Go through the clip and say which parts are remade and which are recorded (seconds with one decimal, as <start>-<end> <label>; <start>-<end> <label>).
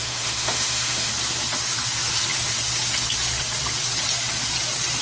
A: 0.0-1.1 remade; 1.1-5.0 recorded